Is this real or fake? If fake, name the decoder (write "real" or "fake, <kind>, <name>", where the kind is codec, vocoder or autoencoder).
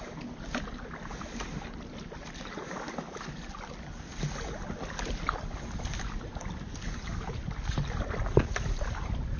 real